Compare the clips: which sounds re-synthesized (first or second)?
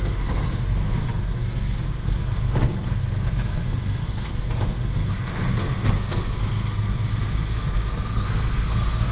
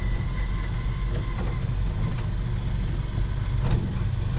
first